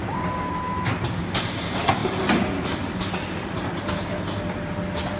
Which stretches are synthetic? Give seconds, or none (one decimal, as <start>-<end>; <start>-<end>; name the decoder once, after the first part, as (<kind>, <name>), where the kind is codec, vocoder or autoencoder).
0.0-0.5 (codec, DAC)